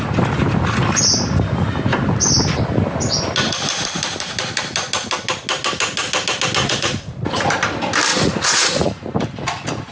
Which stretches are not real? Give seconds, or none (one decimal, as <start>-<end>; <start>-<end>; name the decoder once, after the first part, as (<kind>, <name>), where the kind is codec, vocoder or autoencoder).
6.6-7.4 (vocoder, Vocos); 8.1-9.1